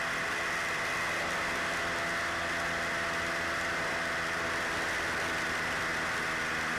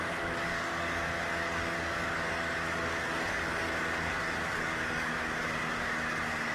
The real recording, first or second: first